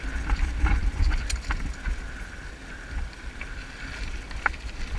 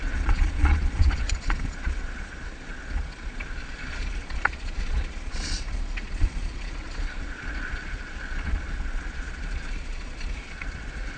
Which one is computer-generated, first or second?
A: second